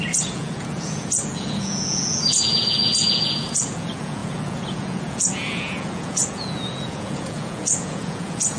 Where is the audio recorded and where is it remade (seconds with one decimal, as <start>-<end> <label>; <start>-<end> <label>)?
0.0-8.6 remade